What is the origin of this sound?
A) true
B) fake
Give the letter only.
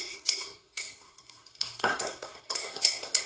B